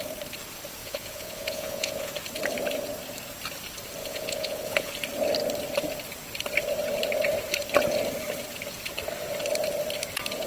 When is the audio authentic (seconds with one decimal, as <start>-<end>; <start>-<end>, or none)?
0.0-0.8; 2.1-4.0; 4.9-10.5